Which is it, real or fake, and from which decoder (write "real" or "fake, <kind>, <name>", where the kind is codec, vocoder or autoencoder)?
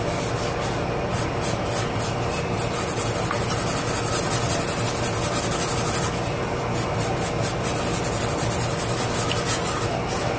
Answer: real